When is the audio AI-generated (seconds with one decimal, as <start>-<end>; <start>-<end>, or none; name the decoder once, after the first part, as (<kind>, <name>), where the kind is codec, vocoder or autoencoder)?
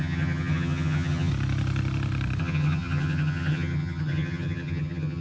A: 0.0-1.3 (vocoder, HiFi-GAN); 2.4-5.2